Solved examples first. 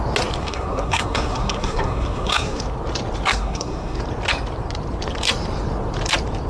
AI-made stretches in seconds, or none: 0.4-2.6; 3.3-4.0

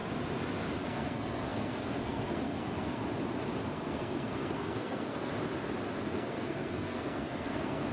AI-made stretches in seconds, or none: 0.8-3.0; 3.7-5.3; 6.0-7.9

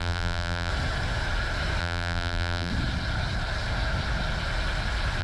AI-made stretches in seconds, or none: 0.0-0.7; 1.8-2.7

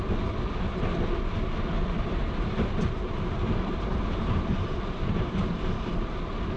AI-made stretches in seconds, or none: 2.2-5.6

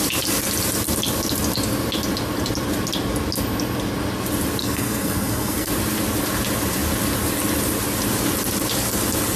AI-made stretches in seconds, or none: 4.6-5.7

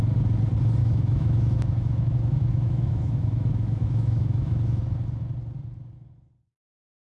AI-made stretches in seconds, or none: 0.8-4.8

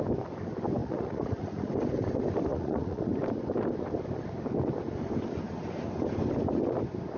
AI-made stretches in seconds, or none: 0.8-1.7; 2.5-3.1